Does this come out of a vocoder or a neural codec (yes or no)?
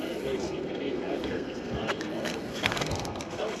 yes